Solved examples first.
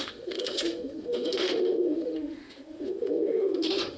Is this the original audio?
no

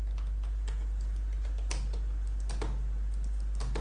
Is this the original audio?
yes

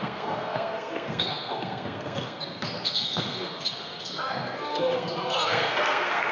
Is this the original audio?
no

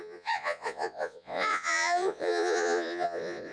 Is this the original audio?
no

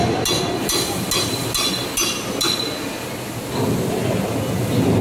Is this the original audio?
yes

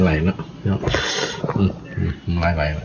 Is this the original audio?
yes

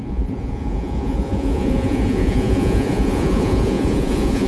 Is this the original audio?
no